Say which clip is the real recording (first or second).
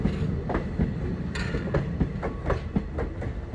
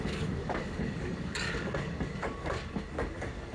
first